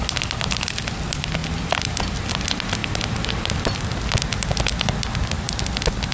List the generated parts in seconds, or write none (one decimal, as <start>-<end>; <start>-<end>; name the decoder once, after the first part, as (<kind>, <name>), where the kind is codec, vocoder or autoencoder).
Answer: none